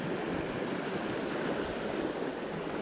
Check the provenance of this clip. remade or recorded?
recorded